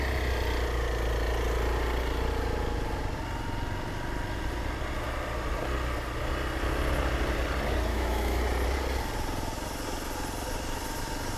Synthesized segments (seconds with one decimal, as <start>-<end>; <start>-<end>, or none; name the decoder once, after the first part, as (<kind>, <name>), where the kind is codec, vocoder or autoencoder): 7.9-8.4 (autoencoder, DAC-VAE)